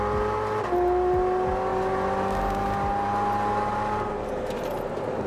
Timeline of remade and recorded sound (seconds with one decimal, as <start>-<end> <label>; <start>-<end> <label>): 0.0-5.3 recorded